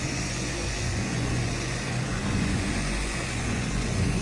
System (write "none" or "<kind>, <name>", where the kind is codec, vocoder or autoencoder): vocoder, Vocos